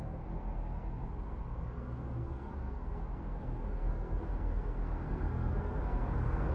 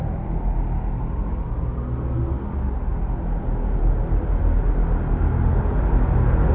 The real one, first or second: second